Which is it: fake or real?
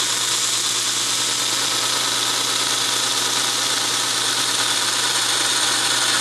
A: real